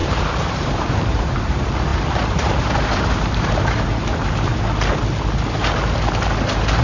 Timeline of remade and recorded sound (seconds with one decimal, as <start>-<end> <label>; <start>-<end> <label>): 0.0-4.5 remade; 4.5-6.8 recorded